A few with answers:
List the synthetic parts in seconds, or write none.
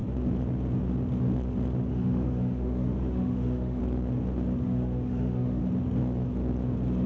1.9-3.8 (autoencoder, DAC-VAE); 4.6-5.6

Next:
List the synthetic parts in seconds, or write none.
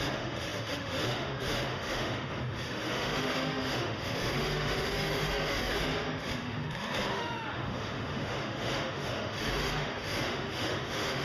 0.0-11.2 (autoencoder, DAC-VAE)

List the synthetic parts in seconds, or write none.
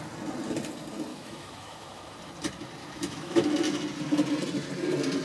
1.1-2.0 (autoencoder, DAC-VAE); 2.8-3.5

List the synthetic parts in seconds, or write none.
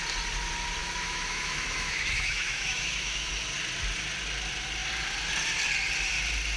0.8-3.3 (autoencoder, DAC-VAE)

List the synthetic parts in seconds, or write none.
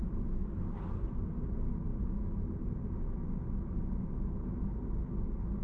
none